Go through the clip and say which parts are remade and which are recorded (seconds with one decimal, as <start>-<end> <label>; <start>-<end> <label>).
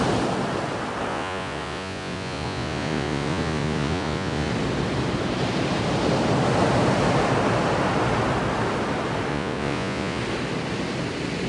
0.0-1.1 recorded; 1.1-4.5 remade; 4.5-9.3 recorded; 9.3-10.2 remade; 10.2-11.5 recorded